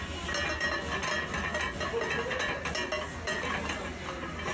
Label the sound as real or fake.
real